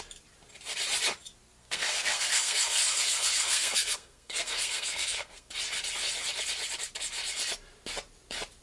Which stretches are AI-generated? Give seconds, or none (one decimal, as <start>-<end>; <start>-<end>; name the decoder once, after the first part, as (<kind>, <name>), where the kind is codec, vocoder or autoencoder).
1.6-5.5 (codec, SNAC)